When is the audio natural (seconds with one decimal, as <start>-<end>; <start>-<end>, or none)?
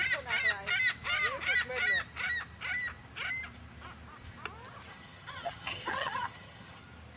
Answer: 0.0-4.9; 6.8-7.2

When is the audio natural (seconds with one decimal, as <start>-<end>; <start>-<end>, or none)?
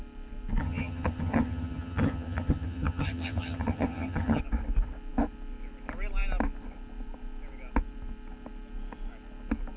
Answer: 0.0-0.6; 4.4-9.8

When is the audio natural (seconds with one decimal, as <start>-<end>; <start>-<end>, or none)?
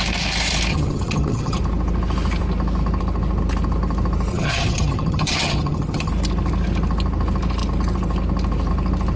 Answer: 0.0-0.7; 1.6-4.3; 6.1-9.2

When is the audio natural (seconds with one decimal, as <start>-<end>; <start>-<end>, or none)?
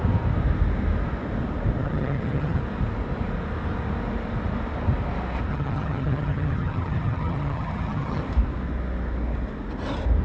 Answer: 0.0-1.8; 2.6-5.5; 8.2-10.2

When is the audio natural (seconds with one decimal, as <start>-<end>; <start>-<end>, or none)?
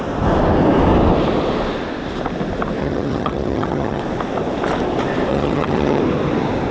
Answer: 0.0-2.8; 4.0-5.3; 6.0-6.7